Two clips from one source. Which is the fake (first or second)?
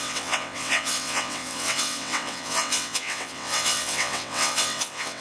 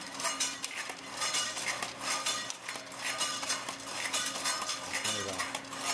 first